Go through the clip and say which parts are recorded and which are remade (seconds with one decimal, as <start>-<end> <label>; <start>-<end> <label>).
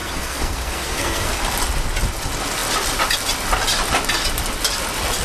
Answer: 0.0-1.4 remade; 1.4-5.2 recorded